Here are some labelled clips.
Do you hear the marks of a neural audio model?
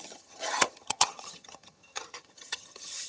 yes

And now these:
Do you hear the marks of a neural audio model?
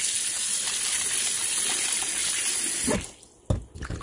no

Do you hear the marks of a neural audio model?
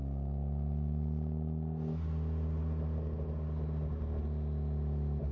no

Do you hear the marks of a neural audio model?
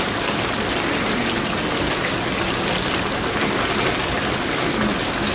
no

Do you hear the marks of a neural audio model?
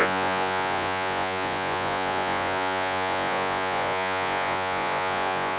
yes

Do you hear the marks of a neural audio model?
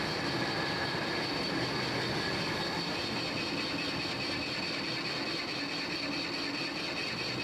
no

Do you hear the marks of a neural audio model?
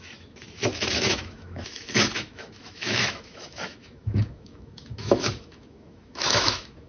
yes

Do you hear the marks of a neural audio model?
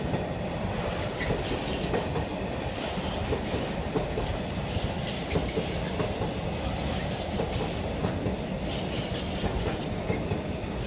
no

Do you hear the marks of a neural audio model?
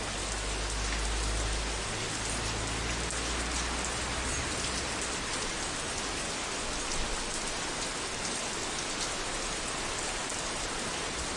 no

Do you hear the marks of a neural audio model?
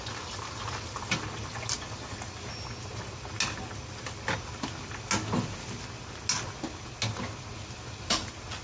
no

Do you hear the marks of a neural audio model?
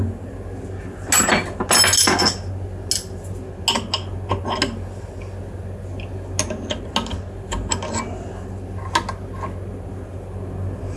no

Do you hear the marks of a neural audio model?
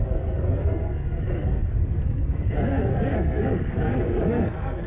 yes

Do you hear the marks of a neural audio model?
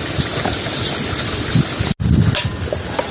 no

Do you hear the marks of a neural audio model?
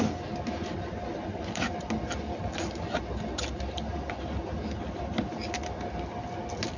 no